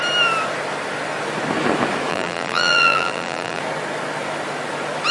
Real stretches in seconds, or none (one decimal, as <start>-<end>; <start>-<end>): 0.0-2.1; 3.6-5.1